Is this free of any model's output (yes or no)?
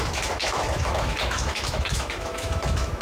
no